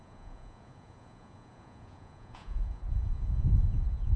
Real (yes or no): no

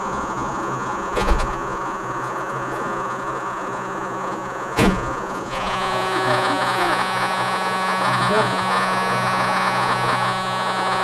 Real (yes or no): no